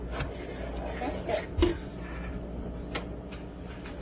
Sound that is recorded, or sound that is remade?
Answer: recorded